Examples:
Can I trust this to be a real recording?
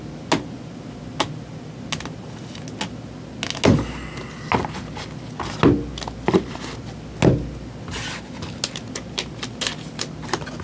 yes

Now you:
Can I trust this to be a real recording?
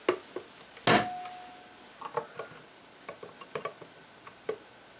yes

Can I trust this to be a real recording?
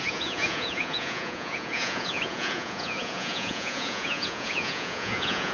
no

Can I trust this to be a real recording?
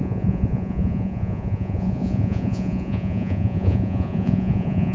no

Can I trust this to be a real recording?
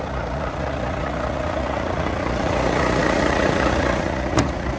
no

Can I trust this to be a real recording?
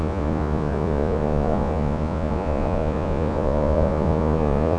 no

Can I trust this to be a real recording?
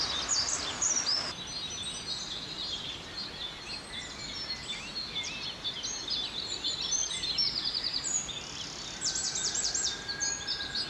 yes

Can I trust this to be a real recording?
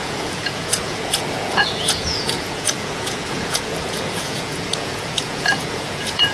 no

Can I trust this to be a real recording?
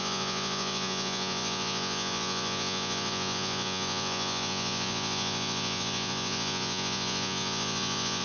no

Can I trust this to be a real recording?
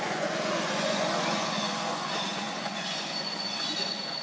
no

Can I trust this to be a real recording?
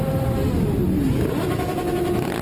yes